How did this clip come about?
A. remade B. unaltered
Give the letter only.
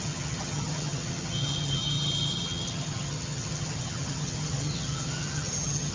A